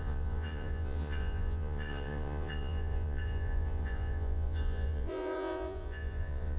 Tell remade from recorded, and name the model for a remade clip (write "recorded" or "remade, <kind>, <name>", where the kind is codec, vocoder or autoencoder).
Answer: remade, vocoder, Vocos